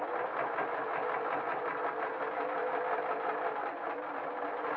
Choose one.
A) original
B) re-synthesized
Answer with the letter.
A